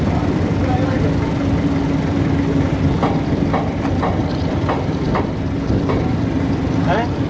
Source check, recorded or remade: remade